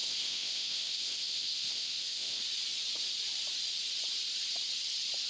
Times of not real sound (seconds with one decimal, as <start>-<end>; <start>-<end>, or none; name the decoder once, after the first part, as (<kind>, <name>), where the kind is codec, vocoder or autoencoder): 0.0-2.4 (codec, ZipCodec)